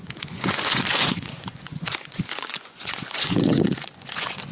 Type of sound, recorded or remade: remade